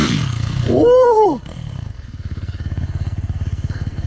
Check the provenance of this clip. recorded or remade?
remade